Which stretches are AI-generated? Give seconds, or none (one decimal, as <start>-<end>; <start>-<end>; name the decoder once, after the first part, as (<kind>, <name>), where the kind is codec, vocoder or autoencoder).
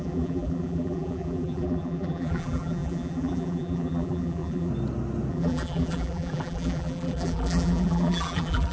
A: 0.0-4.7 (vocoder, BigVGAN v2); 5.3-8.7